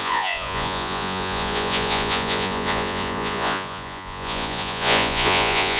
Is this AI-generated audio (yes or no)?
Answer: yes